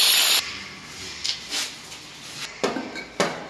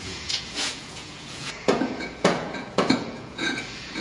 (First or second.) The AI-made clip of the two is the second